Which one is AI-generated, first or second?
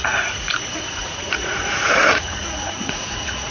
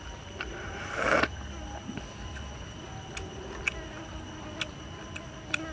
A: first